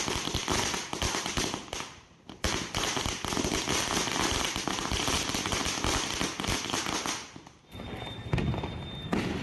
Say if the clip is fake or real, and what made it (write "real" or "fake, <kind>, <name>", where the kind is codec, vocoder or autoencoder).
real